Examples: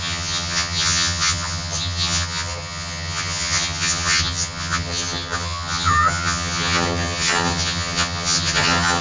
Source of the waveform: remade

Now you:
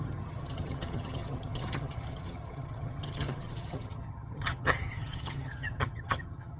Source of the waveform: remade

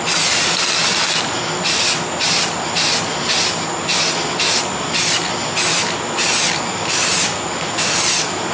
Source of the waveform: recorded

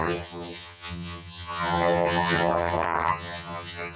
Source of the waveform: remade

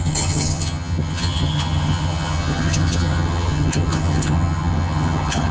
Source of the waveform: remade